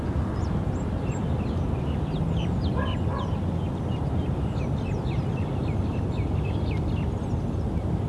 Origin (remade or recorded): recorded